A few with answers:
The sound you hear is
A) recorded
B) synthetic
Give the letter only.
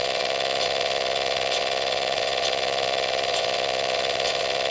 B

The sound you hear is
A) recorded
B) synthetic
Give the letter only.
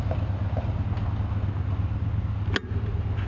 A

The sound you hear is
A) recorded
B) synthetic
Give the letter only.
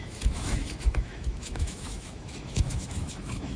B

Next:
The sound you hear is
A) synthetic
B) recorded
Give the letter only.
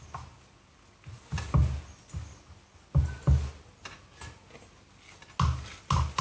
B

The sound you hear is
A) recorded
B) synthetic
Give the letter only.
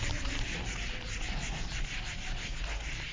A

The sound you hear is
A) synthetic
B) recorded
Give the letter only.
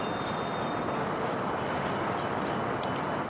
B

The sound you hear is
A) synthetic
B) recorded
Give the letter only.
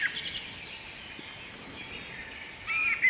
B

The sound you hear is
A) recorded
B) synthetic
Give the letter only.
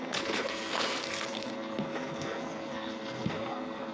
B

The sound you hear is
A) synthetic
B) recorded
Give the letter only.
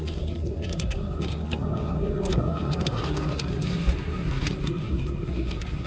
A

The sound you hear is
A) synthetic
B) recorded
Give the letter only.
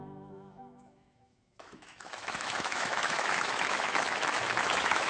A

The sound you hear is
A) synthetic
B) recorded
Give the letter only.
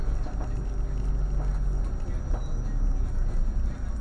B